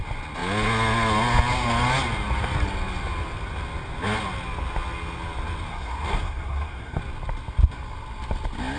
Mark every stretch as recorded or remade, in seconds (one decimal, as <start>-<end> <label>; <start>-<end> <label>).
0.0-5.7 recorded; 5.7-7.0 remade; 7.0-8.8 recorded